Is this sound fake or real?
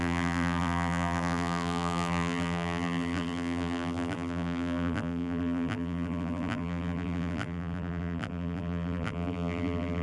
fake